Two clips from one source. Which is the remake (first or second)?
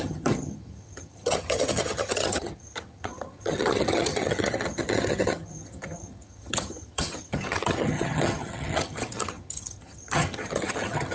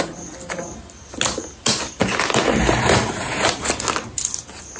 first